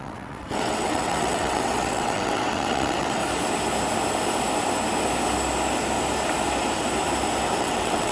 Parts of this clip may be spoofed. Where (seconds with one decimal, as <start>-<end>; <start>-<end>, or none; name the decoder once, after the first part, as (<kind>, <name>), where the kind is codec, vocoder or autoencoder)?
0.0-3.2 (vocoder, WaveNeXt); 7.6-8.1